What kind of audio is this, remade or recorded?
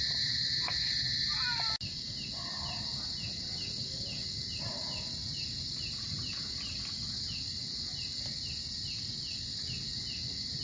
recorded